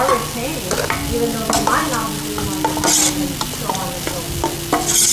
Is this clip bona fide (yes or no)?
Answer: yes